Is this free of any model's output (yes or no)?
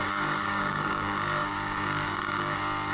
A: no